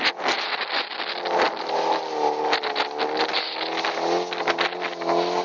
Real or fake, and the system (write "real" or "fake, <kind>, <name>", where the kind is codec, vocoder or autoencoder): real